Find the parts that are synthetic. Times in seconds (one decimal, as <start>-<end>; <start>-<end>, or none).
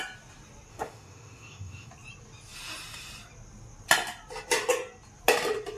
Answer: 0.7-1.9